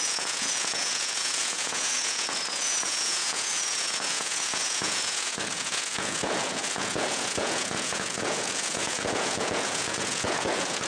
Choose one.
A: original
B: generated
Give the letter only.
B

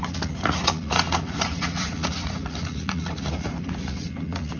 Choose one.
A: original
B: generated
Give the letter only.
B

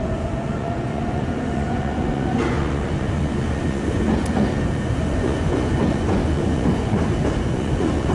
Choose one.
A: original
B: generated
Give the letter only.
B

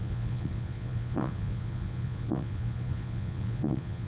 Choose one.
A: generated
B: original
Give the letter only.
A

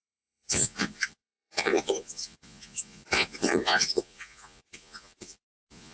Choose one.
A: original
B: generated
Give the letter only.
B